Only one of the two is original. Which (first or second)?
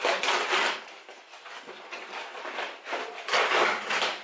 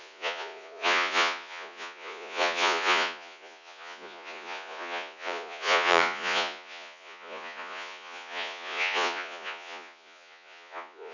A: first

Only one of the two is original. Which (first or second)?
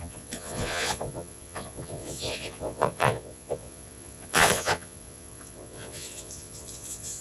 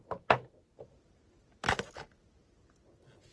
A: second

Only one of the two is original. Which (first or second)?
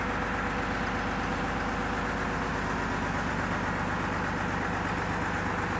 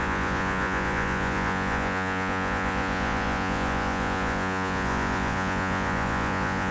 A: first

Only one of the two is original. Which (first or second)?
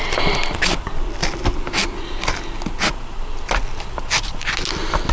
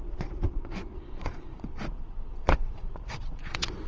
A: first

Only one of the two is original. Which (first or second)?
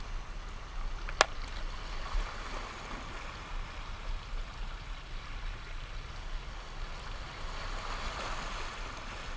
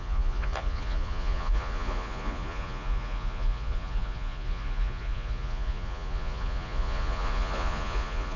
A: first